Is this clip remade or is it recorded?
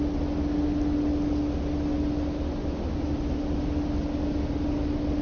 recorded